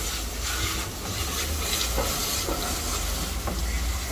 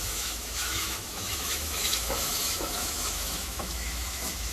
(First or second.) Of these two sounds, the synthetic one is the second